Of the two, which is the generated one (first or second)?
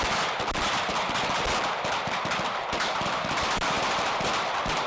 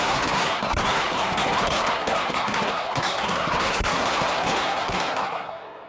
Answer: second